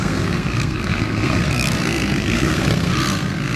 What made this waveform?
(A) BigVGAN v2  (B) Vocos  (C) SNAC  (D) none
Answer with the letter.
C